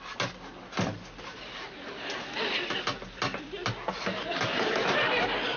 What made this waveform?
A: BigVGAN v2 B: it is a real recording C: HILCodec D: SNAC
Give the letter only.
B